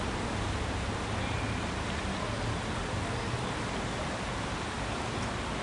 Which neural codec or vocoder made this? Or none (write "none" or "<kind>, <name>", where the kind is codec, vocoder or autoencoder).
none